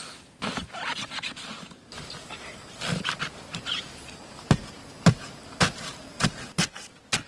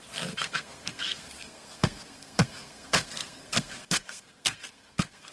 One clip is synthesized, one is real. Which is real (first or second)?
first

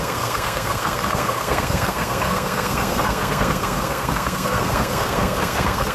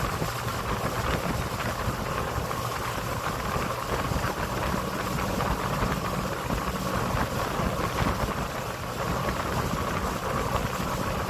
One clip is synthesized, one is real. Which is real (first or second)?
second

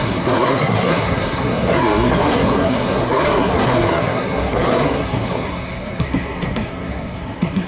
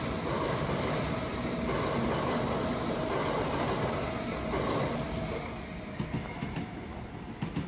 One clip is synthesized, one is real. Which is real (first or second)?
second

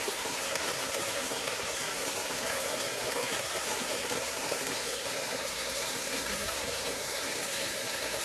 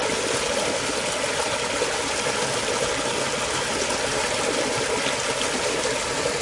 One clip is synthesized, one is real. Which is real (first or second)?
second